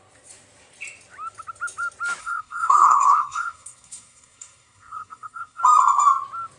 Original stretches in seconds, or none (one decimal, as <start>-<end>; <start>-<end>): 0.0-2.2; 5.6-6.6